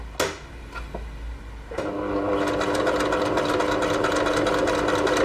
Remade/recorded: recorded